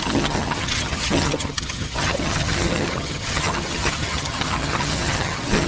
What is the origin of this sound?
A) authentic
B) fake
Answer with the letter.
B